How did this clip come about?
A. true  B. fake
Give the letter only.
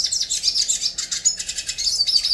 A